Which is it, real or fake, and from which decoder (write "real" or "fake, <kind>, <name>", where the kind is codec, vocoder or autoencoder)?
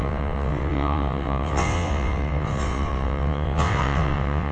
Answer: fake, vocoder, WaveNeXt